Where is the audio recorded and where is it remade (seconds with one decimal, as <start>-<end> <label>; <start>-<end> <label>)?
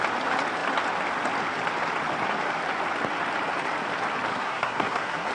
0.0-4.3 recorded; 4.3-5.3 remade